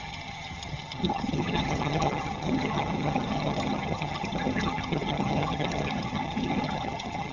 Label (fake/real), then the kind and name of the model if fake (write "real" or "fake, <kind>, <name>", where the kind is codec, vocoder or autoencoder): fake, vocoder, HiFi-GAN